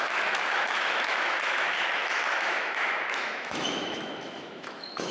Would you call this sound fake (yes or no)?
yes